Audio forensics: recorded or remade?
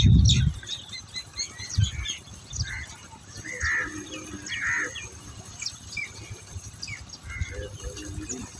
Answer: recorded